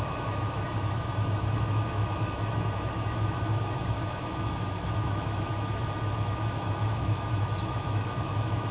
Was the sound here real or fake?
fake